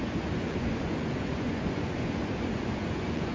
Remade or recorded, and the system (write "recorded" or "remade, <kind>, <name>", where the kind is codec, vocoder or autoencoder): remade, vocoder, Vocos